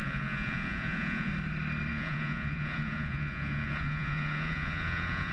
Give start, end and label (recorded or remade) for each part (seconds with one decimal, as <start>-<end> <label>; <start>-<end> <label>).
0.0-1.3 remade; 1.3-1.9 recorded; 1.9-5.3 remade